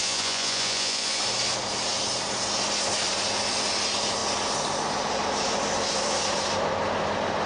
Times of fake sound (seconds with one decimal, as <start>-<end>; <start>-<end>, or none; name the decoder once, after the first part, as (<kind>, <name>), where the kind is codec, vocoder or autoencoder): 0.0-1.2 (vocoder, Vocos)